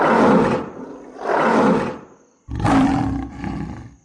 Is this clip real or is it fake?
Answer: real